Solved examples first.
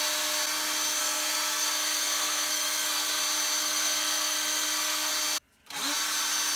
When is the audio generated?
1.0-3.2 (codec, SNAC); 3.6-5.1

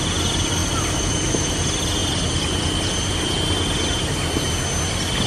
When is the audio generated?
none

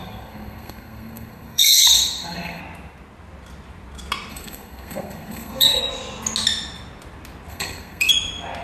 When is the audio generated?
0.0-2.6 (codec, SNAC); 4.3-5.8; 7.5-8.1

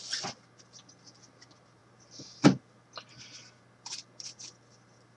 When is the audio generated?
none